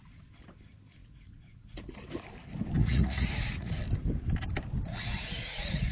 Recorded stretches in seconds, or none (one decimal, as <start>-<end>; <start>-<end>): 0.0-1.0; 2.1-2.8; 3.7-4.9